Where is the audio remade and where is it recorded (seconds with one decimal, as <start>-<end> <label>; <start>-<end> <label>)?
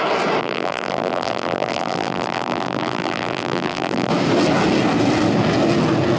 0.0-0.4 recorded; 0.4-4.1 remade; 4.1-6.2 recorded